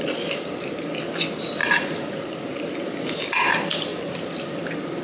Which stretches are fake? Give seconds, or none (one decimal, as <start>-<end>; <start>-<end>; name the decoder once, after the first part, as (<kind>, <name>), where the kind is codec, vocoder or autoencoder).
none